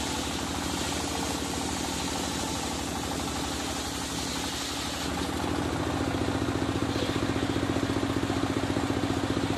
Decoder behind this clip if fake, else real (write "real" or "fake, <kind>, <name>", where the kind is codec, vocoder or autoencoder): real